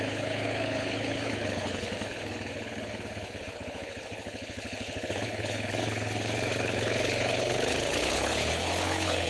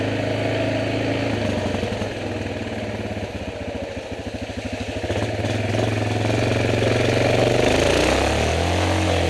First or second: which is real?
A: second